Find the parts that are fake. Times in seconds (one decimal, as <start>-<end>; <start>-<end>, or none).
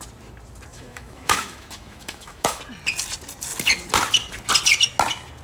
0.7-2.6